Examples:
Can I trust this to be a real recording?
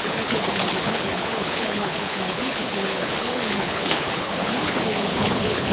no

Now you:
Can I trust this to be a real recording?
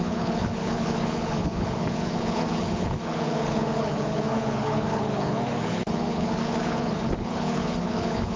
no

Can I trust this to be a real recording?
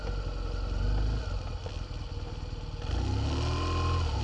yes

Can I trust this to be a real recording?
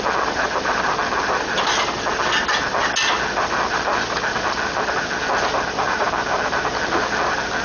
yes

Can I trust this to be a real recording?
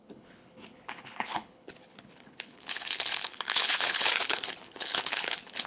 no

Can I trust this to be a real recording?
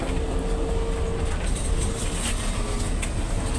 yes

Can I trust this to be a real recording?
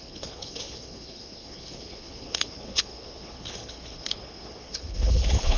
no